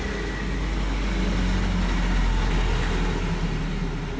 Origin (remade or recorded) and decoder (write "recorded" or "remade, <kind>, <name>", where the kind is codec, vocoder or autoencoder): recorded